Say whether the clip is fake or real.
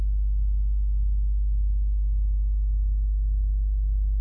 real